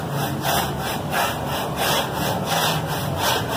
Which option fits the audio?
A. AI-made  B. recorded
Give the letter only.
B